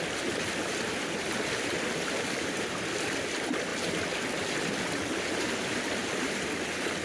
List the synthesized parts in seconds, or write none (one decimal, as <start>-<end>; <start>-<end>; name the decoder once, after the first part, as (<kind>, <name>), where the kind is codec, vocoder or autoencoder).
none